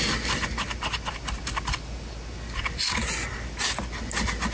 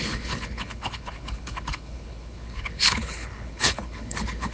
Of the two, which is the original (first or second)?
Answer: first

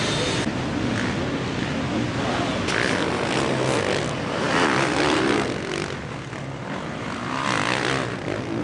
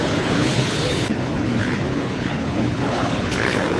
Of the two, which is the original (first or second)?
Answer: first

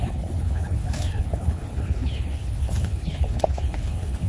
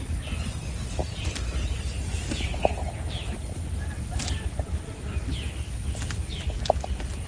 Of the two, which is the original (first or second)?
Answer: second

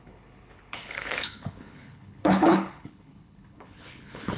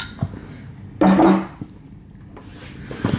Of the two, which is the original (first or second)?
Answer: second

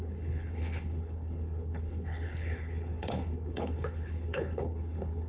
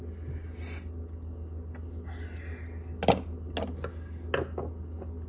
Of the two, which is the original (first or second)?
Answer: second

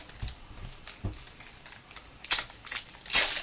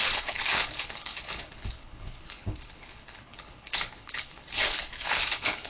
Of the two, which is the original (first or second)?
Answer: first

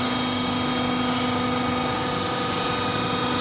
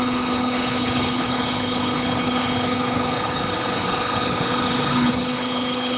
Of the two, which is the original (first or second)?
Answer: first